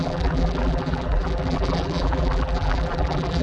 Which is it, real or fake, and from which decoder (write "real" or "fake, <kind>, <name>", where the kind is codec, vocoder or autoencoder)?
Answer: fake, vocoder, BigVGAN v2